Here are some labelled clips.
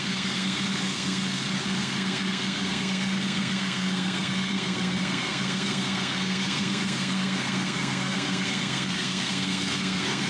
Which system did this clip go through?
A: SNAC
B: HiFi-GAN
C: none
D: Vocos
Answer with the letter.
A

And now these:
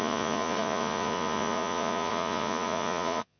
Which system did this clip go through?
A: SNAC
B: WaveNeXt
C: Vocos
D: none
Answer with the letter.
C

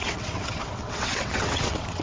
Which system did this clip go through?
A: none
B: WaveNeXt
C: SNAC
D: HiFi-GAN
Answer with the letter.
B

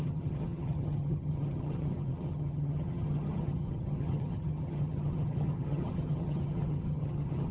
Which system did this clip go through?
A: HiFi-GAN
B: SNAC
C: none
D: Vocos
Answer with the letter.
A